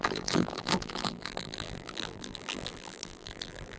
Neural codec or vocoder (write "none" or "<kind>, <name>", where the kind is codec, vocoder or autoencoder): vocoder, BigVGAN v2